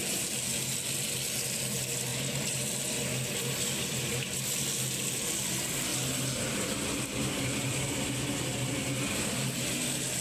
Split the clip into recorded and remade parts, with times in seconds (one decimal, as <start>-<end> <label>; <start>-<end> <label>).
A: 0.0-10.2 recorded